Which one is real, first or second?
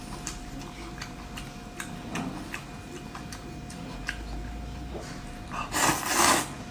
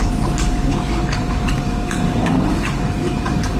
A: first